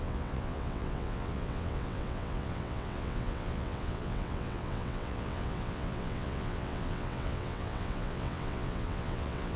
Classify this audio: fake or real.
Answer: fake